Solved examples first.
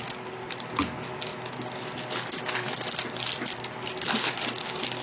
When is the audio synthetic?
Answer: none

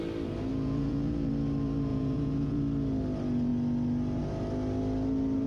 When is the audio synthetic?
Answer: 0.5-1.3; 1.9-2.6

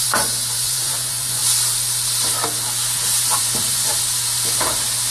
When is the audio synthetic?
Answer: 0.0-1.4; 3.4-3.9

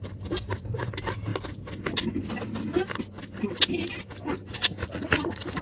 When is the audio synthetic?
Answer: 4.8-5.6